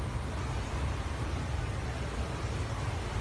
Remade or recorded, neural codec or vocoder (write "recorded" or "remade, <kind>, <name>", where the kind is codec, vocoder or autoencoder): recorded